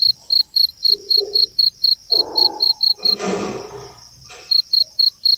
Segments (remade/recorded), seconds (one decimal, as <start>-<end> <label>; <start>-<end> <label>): 0.0-0.7 recorded; 0.7-3.6 remade; 3.6-5.4 recorded